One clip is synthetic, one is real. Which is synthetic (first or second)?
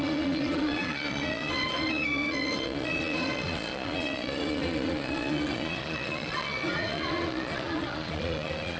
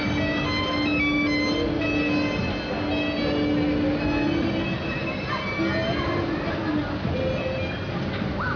first